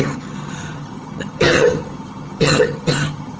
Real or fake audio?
fake